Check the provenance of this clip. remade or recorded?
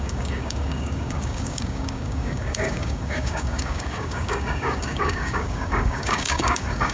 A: remade